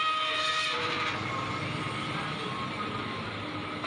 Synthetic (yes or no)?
no